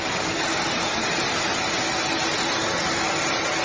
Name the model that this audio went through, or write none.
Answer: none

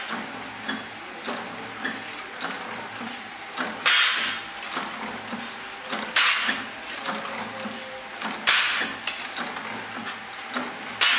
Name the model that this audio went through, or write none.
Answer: none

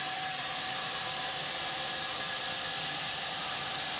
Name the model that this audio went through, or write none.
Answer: vocoder, BigVGAN v2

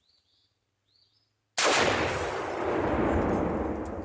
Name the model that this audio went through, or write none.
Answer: none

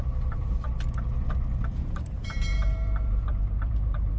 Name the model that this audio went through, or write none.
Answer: vocoder, BigVGAN v2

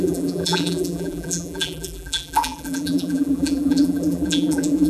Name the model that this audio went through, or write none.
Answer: vocoder, BigVGAN v2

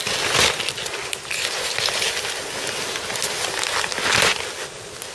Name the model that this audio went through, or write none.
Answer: none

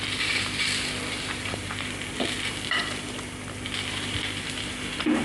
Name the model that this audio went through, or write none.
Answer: vocoder, BigVGAN v2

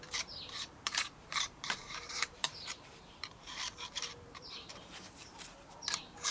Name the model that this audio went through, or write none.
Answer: vocoder, BigVGAN v2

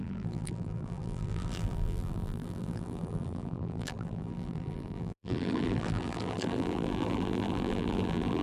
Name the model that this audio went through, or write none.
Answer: vocoder, BigVGAN v2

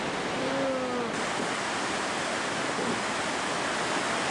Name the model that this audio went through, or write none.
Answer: none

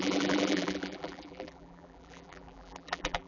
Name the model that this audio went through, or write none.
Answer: vocoder, BigVGAN v2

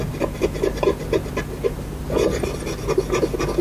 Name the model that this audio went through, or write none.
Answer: none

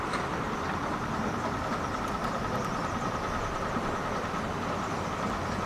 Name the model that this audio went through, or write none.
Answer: none